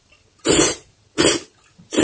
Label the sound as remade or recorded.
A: remade